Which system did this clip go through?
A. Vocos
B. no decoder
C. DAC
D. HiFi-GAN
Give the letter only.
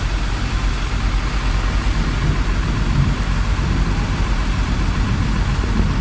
B